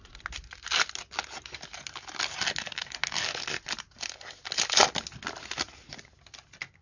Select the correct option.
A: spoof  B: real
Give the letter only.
B